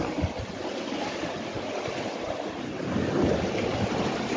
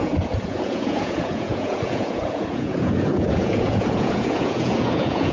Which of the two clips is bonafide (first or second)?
first